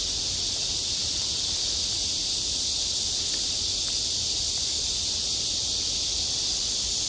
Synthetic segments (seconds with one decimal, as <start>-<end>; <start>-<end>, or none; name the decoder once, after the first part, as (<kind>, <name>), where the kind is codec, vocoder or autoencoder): none